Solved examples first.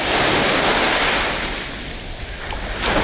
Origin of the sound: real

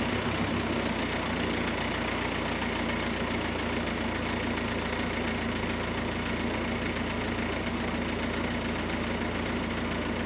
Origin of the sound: real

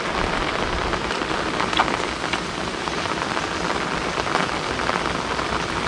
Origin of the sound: real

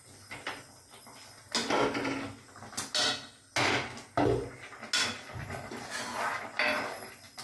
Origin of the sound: real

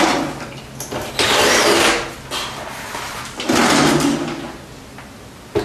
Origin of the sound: real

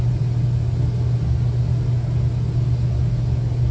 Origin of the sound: real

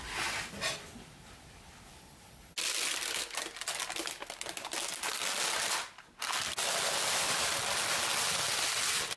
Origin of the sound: real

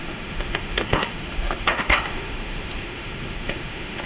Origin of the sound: fake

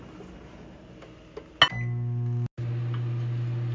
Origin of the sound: real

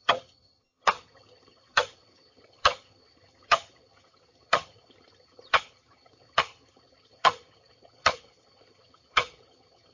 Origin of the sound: fake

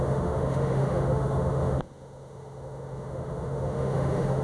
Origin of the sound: fake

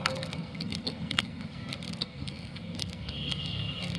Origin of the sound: fake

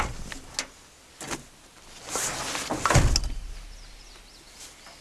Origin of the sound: real